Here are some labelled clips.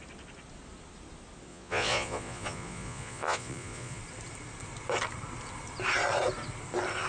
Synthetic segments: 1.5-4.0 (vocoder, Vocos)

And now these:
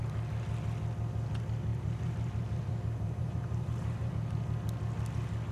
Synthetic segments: 1.7-4.1 (vocoder, BigVGAN v2)

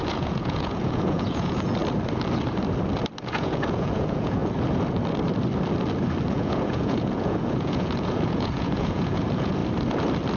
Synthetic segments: 0.0-1.8 (vocoder, Vocos); 3.2-4.4; 6.3-9.6